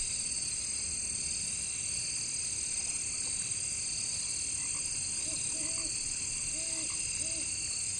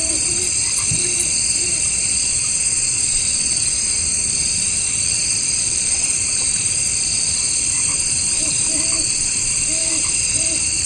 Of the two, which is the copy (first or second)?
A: second